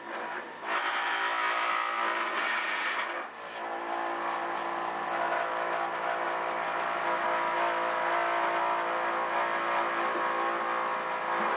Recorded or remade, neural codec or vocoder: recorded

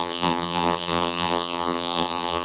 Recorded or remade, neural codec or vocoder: remade, vocoder, BigVGAN v2